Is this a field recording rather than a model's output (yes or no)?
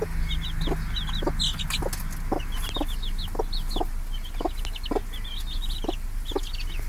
yes